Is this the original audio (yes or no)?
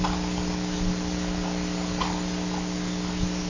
yes